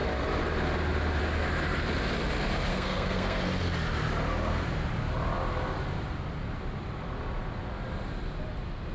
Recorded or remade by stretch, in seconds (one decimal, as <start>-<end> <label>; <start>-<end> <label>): 0.0-2.7 recorded; 2.7-3.4 remade; 3.4-8.9 recorded